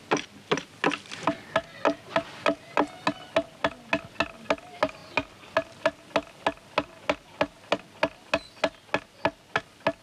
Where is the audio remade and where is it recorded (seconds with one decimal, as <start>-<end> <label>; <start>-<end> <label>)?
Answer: 0.0-10.0 recorded